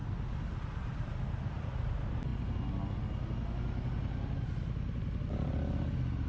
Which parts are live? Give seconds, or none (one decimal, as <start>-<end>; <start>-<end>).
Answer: 0.0-0.7; 2.3-6.3